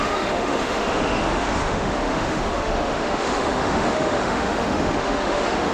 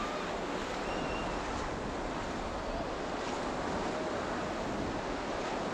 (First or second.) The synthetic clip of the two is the first